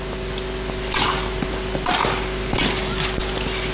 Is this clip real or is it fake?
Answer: real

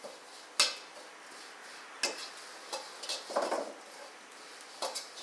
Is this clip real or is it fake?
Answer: real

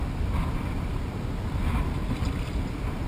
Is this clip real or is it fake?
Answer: real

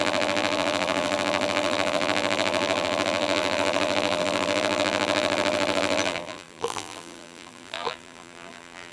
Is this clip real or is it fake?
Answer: fake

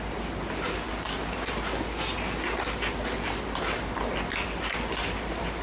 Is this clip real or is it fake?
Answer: real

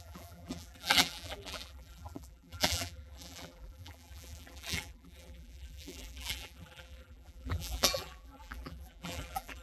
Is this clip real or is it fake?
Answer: fake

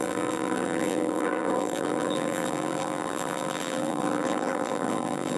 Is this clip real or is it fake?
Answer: fake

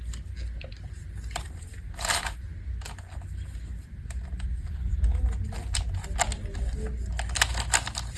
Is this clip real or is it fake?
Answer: real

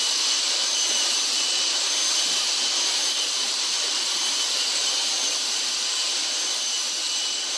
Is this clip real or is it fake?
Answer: fake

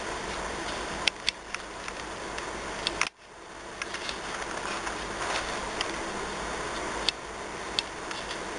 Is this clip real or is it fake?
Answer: real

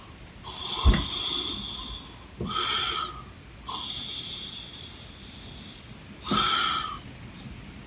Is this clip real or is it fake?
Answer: real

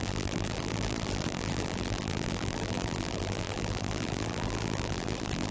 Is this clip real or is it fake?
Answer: fake